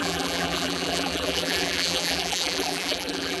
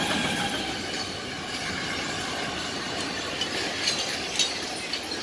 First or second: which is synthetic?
first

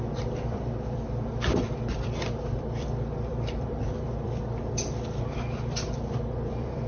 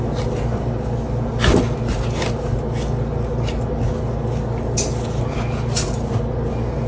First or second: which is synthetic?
first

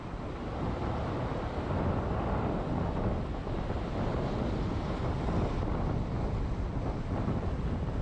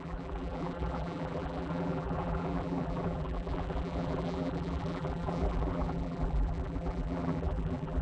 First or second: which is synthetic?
second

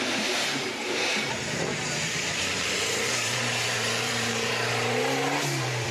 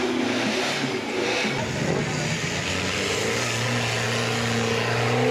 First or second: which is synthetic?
first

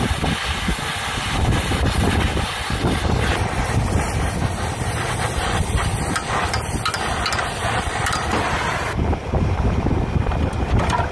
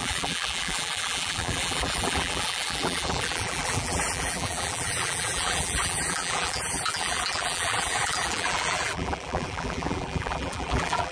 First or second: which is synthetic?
second